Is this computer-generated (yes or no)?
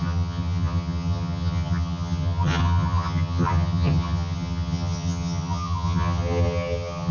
yes